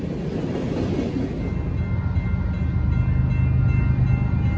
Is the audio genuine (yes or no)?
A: yes